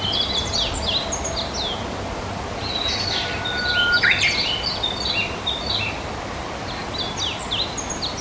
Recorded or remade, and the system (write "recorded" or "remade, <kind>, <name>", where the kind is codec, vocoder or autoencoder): recorded